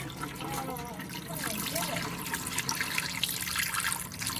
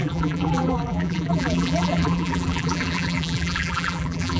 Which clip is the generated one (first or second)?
second